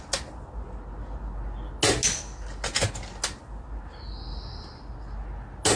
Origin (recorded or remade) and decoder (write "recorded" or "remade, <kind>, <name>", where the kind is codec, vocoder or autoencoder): recorded